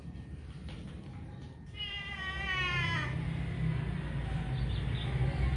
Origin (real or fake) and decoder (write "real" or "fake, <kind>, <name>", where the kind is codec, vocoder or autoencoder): real